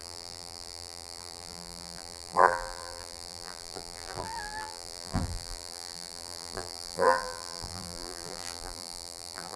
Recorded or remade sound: remade